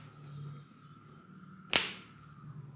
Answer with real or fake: real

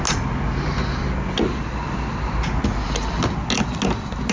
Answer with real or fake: real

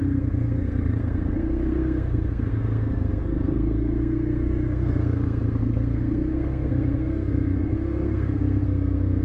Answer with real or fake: fake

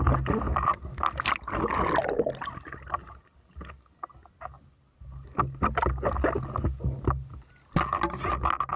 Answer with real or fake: real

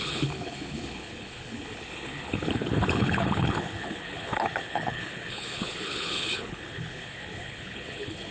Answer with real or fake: fake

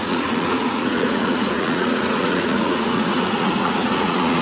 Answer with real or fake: fake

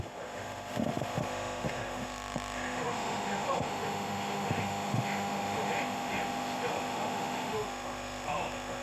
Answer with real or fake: fake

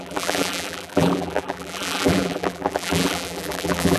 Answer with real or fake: fake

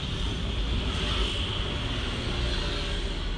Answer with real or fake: real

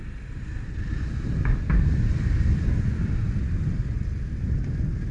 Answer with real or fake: real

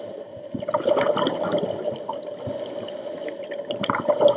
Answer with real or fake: real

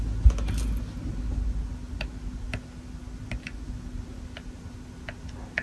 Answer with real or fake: real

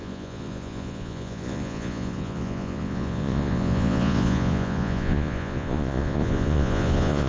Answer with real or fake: fake